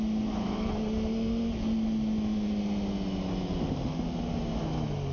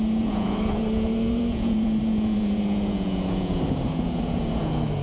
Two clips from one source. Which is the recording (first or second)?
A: first